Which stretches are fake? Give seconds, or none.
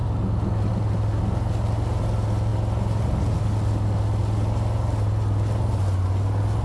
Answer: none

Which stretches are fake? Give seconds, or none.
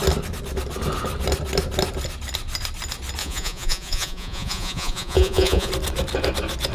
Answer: 3.2-5.7 (vocoder, Vocos)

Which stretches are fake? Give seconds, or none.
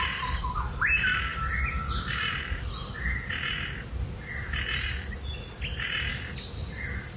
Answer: none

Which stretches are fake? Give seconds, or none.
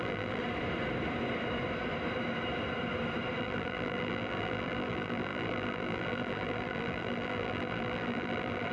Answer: 0.0-0.4 (vocoder, BigVGAN v2); 3.4-8.7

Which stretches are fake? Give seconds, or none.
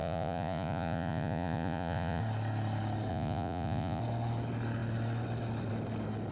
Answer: 0.0-2.2 (vocoder, Vocos); 3.1-4.0